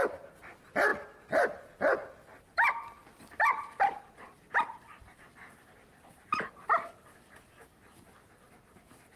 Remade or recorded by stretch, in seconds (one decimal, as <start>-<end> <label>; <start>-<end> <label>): 0.0-9.2 recorded